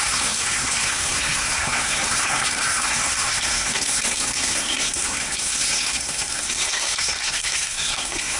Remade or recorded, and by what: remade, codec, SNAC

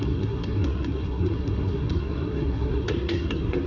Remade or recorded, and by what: remade, codec, SNAC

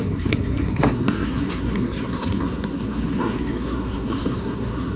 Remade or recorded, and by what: remade, codec, SNAC